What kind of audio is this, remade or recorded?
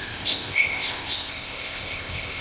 remade